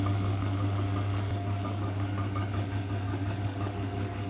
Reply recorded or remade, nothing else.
remade